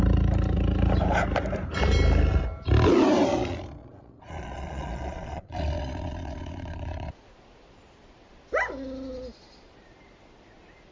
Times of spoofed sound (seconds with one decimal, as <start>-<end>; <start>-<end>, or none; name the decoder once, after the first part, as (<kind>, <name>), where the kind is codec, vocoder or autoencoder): 3.8-7.3 (vocoder, Vocos)

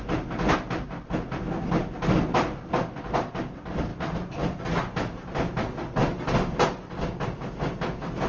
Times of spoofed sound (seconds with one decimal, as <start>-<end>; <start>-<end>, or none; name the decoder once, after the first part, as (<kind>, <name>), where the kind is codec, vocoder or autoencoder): none

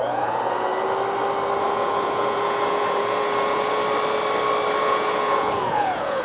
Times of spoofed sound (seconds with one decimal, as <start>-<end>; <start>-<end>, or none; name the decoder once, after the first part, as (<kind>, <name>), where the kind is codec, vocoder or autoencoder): 0.0-0.7 (vocoder, Vocos); 1.6-3.8; 4.8-6.2

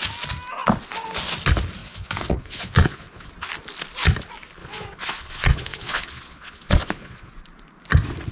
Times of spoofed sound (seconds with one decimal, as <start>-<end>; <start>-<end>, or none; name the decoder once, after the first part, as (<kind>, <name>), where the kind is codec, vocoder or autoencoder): 1.8-3.3 (vocoder, Vocos); 4.6-7.3